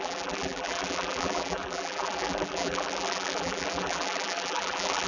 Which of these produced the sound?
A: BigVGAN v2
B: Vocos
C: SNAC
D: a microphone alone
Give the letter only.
A